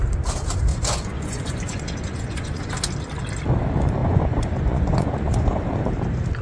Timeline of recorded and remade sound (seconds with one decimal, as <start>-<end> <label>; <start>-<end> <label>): 0.0-0.7 recorded; 0.7-2.7 remade; 2.7-4.0 recorded; 4.0-5.7 remade; 5.7-6.4 recorded

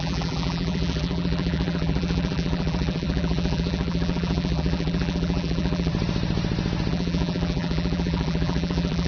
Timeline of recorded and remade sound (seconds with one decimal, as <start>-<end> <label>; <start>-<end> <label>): 0.0-5.9 remade; 5.9-6.9 recorded; 6.9-9.1 remade

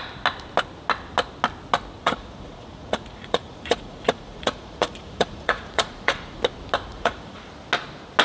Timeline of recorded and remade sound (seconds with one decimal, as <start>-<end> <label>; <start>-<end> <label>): 0.0-2.0 recorded; 2.0-6.4 remade; 6.4-6.9 recorded; 6.9-7.5 remade; 7.5-8.2 recorded

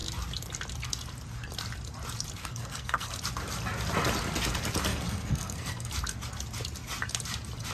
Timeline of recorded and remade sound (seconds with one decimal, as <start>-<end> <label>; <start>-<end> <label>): 0.0-2.4 recorded; 2.4-3.1 remade; 3.1-4.9 recorded; 4.9-5.9 remade; 5.9-7.7 recorded

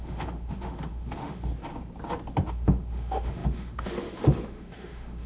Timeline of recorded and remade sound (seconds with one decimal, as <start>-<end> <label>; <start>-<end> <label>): 0.0-1.5 remade; 1.5-2.5 recorded; 2.5-5.3 remade

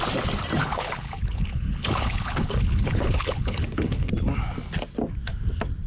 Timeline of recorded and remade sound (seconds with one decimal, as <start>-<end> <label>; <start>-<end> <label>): 0.0-0.6 recorded; 0.6-4.1 remade; 4.1-5.9 recorded

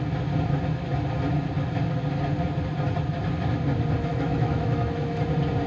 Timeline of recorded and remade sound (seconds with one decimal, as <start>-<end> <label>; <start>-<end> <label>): 0.0-4.1 recorded; 4.1-5.2 remade; 5.2-5.7 recorded

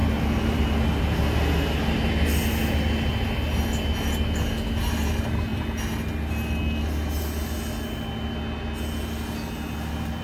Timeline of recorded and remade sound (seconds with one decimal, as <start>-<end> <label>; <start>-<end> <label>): 0.0-10.2 recorded